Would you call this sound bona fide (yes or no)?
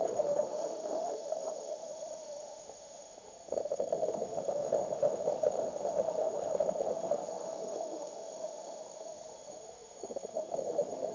no